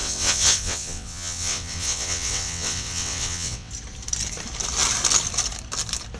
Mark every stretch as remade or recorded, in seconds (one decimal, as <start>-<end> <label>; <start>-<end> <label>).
0.0-3.7 remade; 3.7-6.2 recorded